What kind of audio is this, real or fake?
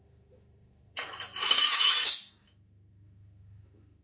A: fake